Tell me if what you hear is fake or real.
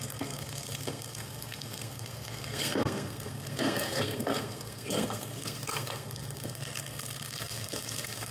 fake